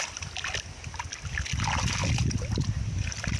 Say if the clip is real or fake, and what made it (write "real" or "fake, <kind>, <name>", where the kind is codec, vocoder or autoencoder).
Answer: real